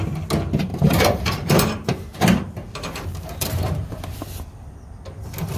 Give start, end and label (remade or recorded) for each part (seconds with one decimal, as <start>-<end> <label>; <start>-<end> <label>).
0.0-0.7 recorded; 0.7-4.0 remade; 4.0-5.6 recorded